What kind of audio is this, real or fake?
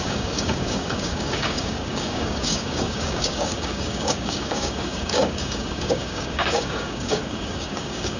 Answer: fake